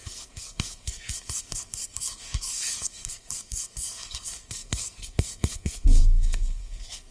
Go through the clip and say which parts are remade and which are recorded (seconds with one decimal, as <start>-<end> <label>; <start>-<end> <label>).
0.0-7.1 remade